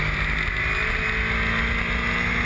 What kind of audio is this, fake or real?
real